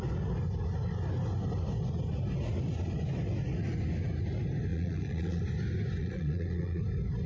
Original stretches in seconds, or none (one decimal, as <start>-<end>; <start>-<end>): 0.0-4.7; 5.4-6.0; 6.8-7.3